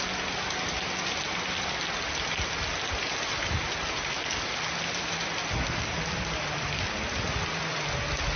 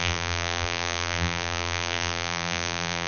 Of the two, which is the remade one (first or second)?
second